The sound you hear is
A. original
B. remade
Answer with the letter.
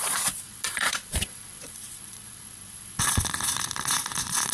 B